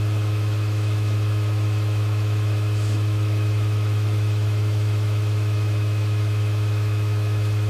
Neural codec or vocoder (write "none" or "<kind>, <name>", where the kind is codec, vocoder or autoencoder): autoencoder, DAC-VAE